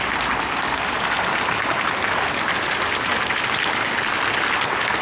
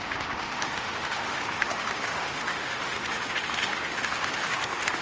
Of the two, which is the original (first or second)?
first